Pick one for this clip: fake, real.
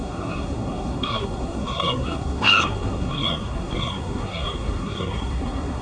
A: fake